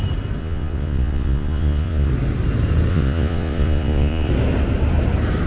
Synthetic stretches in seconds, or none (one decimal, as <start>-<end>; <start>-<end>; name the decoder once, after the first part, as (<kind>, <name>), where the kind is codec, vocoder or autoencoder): 0.4-2.1 (vocoder, Vocos); 2.9-4.3